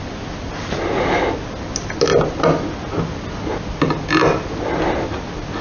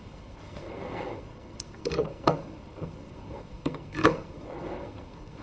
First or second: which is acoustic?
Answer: first